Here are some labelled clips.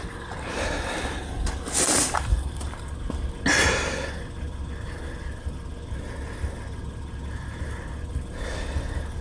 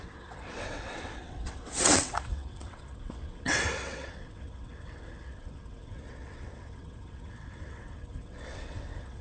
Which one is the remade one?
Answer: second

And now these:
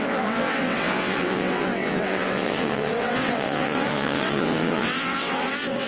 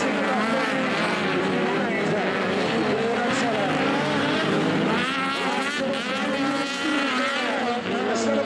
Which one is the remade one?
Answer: first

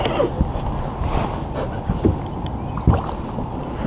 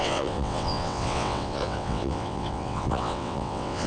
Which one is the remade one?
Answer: second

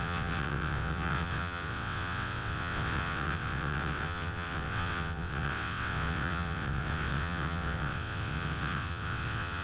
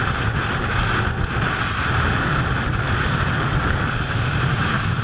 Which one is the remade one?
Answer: first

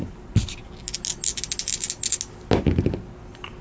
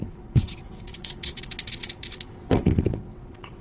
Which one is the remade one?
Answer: second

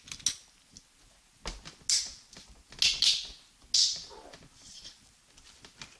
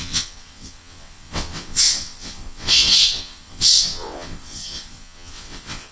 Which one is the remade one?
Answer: second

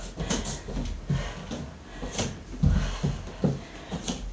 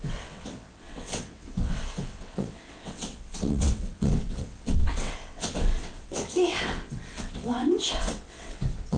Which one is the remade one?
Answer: second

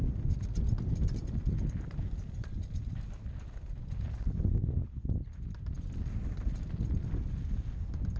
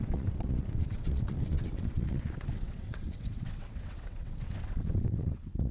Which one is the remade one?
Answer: second